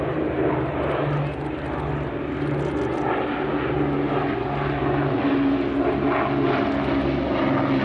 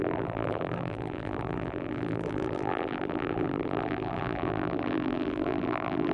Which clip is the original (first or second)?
first